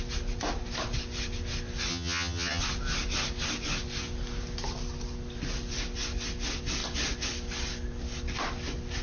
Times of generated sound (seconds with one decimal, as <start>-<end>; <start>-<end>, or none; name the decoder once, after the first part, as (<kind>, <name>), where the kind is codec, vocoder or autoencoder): 1.9-2.6 (vocoder, HiFi-GAN)